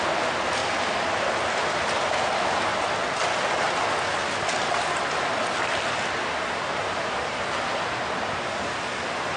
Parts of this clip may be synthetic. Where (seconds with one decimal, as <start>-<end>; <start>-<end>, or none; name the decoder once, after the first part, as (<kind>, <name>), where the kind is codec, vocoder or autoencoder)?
none